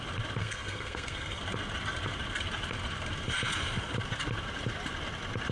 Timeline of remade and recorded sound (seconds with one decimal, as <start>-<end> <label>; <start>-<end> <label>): 0.0-0.4 recorded; 0.4-1.4 remade; 1.4-5.5 recorded